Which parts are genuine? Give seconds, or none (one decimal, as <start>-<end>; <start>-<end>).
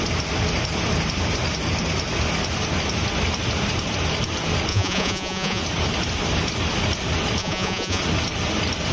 0.0-4.7; 5.6-7.4; 8.0-8.9